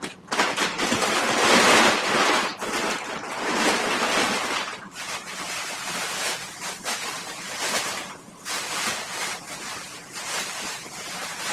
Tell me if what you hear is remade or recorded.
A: remade